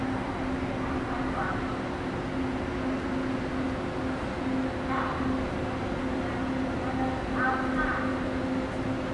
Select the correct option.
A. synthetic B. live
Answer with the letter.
B